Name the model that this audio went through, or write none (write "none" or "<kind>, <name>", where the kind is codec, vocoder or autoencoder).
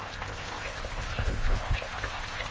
codec, ZipCodec